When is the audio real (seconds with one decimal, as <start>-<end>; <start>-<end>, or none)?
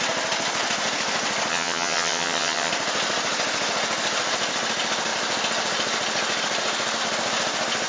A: 0.0-1.5; 2.7-7.9